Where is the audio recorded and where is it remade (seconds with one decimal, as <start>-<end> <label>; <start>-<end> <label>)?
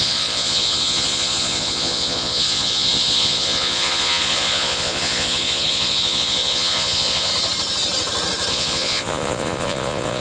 0.0-7.3 remade; 7.3-8.5 recorded; 8.5-10.2 remade